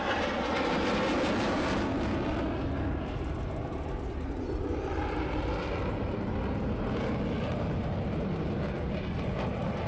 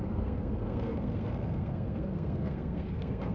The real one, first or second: first